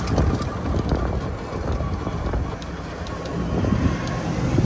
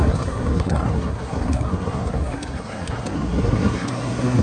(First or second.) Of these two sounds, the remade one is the second